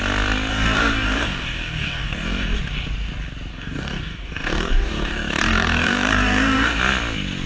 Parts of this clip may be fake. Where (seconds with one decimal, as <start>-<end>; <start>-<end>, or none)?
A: 0.5-2.6; 3.5-6.8